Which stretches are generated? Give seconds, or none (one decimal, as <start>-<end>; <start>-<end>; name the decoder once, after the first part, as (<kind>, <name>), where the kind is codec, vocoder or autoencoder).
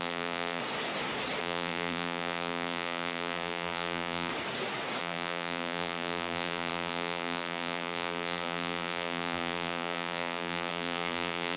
0.0-0.6 (vocoder, BigVGAN v2); 1.4-4.3; 5.0-11.6